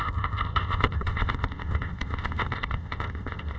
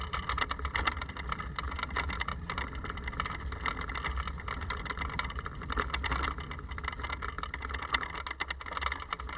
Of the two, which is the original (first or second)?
second